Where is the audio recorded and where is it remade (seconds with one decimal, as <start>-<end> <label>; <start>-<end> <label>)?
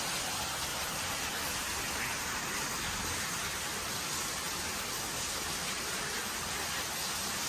0.0-0.7 recorded; 0.7-1.3 remade; 1.3-5.5 recorded; 5.5-6.2 remade; 6.2-7.5 recorded